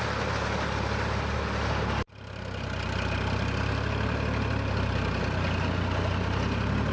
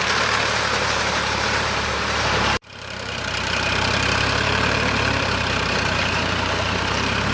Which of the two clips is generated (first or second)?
second